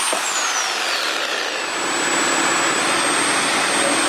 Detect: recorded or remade recorded